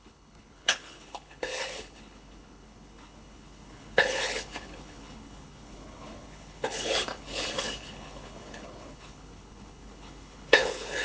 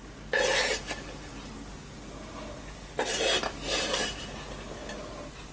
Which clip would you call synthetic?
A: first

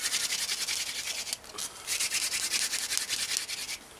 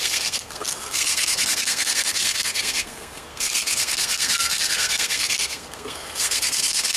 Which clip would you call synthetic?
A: second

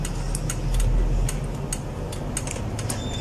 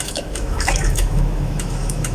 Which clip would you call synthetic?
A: second